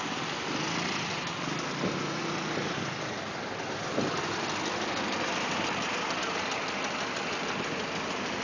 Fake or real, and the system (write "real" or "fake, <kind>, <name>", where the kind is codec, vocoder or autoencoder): real